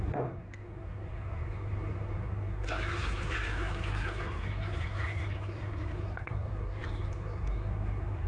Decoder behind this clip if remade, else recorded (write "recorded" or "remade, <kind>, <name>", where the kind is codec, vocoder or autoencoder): remade, codec, SNAC